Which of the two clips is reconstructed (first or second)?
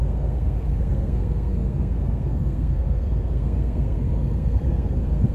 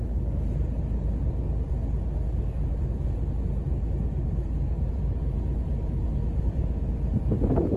first